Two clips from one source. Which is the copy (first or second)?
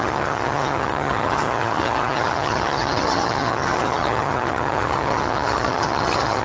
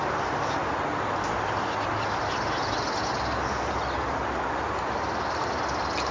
first